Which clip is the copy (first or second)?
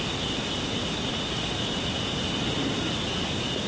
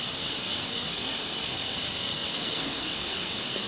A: second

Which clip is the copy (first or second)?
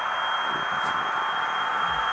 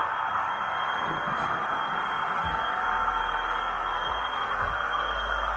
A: second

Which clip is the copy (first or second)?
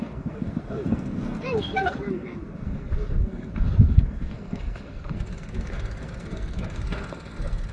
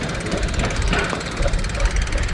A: first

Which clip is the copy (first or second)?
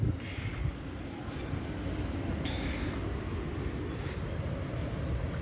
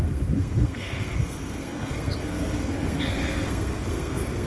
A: second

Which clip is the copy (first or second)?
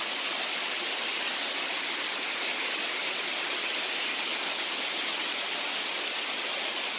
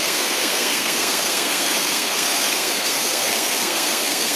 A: second